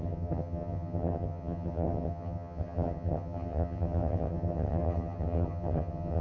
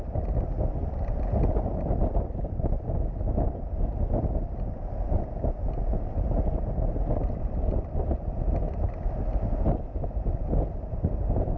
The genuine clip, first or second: second